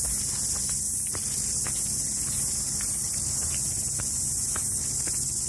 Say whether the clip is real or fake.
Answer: real